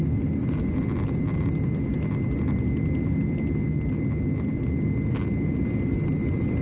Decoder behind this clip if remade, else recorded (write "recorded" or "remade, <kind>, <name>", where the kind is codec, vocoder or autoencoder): recorded